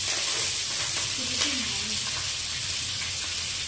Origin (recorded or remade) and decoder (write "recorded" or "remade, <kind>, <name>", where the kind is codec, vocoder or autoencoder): recorded